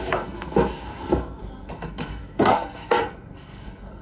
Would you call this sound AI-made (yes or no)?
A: yes